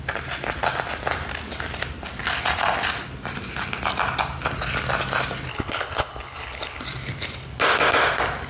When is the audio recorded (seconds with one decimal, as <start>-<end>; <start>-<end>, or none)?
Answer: 0.0-5.5; 6.8-8.5